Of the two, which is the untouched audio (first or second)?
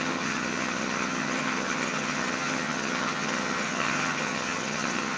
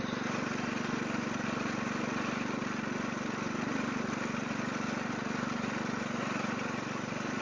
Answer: second